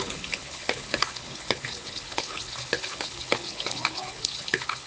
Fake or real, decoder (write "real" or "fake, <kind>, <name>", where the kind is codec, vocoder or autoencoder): fake, codec, HILCodec